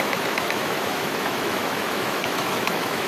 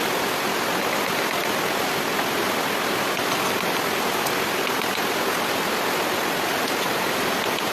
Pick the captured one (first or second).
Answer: second